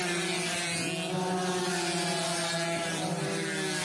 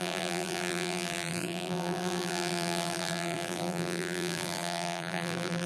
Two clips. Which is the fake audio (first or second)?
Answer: second